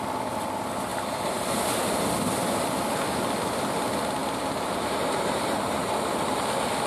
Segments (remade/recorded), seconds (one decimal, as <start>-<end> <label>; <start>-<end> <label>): 0.0-0.9 recorded; 0.9-1.9 remade; 1.9-4.2 recorded; 4.2-5.9 remade; 5.9-6.9 recorded